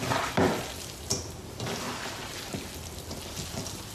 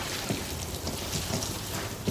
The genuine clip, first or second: first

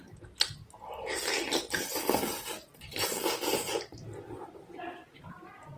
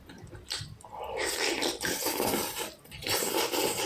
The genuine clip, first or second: first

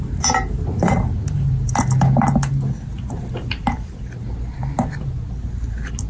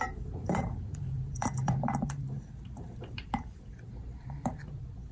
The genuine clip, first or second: first